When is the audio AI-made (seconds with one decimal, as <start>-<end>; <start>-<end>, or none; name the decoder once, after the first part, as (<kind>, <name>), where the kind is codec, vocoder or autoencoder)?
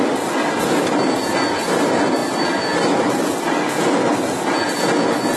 none